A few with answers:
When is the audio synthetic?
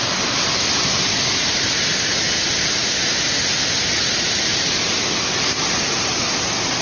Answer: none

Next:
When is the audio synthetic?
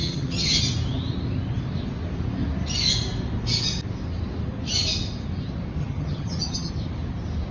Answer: 0.0-0.6 (vocoder, HiFi-GAN); 5.8-6.7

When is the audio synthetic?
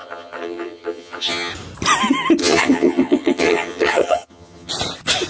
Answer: 0.0-1.5 (vocoder, HiFi-GAN); 2.4-4.7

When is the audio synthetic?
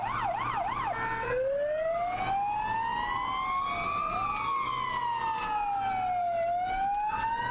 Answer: none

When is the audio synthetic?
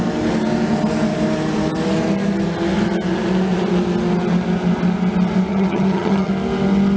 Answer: 5.5-6.3 (vocoder, HiFi-GAN)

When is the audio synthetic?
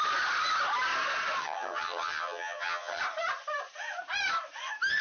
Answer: 1.4-3.0 (vocoder, HiFi-GAN)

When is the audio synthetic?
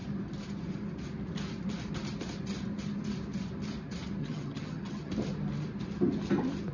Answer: 4.2-5.1 (vocoder, HiFi-GAN)